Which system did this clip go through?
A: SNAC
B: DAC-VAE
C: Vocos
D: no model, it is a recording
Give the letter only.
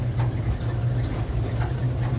D